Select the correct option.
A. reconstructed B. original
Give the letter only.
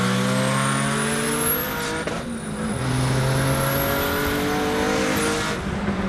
B